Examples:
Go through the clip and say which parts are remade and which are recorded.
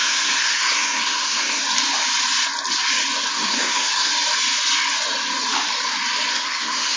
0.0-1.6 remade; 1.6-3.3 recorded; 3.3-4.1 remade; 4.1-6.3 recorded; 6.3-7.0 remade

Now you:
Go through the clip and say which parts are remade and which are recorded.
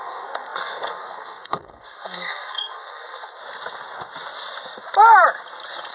0.0-3.4 remade; 3.4-5.9 recorded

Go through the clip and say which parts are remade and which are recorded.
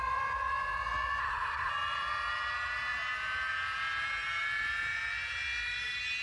0.0-1.2 recorded; 1.2-1.7 remade; 1.7-6.2 recorded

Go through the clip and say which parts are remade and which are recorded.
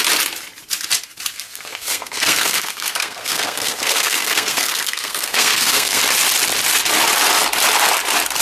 0.0-1.3 recorded; 1.3-6.0 remade; 6.0-8.4 recorded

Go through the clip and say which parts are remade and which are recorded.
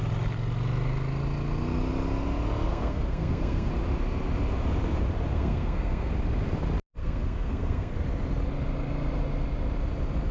0.0-2.7 recorded; 2.7-3.7 remade; 3.7-5.3 recorded; 5.3-6.1 remade; 6.1-7.0 recorded; 7.0-7.9 remade; 7.9-10.3 recorded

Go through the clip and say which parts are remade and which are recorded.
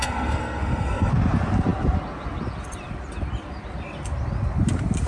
0.0-1.1 remade; 1.1-5.1 recorded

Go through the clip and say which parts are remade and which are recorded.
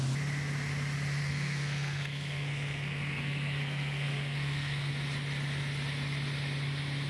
0.0-1.2 recorded; 1.2-4.9 remade; 4.9-7.1 recorded